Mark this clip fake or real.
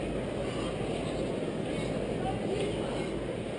real